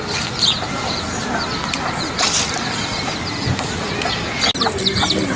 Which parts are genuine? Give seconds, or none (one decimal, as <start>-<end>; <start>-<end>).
0.0-0.8; 4.0-5.4